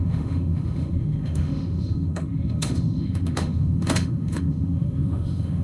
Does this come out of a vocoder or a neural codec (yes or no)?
yes